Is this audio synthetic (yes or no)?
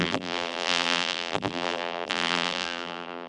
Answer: yes